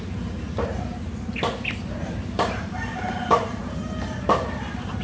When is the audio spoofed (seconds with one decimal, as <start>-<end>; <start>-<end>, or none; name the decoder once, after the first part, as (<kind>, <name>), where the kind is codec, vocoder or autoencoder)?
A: 0.0-1.3 (vocoder, BigVGAN v2); 1.9-5.0